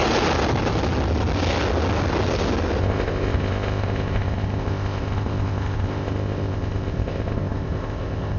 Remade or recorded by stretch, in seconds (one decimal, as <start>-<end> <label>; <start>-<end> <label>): 0.0-2.8 recorded; 2.8-8.4 remade